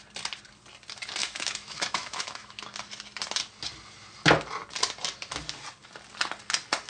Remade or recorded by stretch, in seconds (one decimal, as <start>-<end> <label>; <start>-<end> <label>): 0.0-1.2 recorded; 1.2-2.6 remade; 2.6-6.9 recorded